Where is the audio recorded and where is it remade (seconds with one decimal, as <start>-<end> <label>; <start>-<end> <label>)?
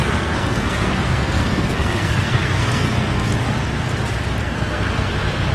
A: 0.0-3.3 remade; 3.3-4.4 recorded; 4.4-5.1 remade; 5.1-5.5 recorded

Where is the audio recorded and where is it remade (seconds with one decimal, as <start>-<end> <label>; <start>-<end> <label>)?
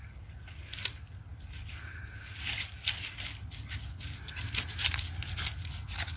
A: 0.0-6.2 recorded